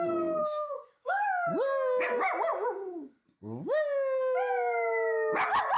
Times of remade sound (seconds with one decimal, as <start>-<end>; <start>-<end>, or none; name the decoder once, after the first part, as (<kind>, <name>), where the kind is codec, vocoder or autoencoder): 0.4-1.5 (codec, DAC)